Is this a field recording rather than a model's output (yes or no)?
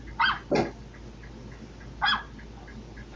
yes